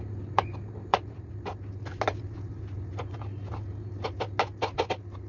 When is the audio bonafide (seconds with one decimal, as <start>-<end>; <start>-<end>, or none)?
0.0-0.9; 3.0-5.3